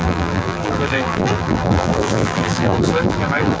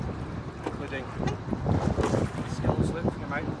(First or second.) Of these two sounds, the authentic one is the second